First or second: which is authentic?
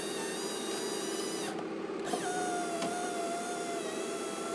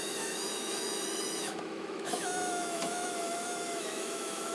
first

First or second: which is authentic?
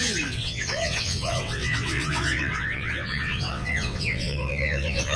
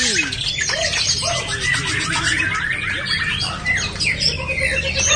second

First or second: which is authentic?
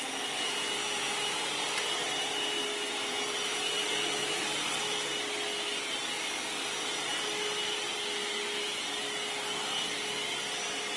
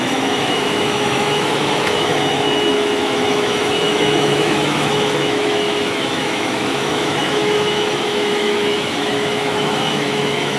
first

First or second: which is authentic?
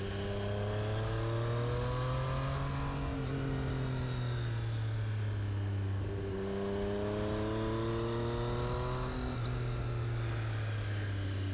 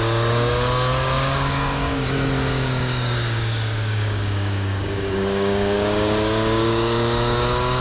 first